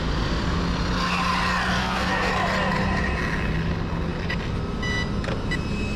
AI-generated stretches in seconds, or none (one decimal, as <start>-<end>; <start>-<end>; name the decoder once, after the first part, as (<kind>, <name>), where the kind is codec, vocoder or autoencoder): 1.8-2.3 (codec, SNAC)